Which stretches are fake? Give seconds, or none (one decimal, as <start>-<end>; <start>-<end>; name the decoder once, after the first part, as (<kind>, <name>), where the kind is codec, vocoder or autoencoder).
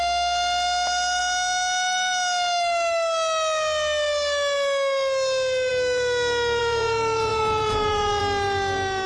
6.6-8.2 (vocoder, Vocos)